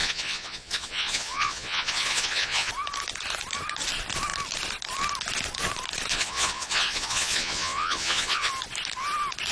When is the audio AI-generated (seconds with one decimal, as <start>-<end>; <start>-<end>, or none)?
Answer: 0.0-2.7; 6.1-8.5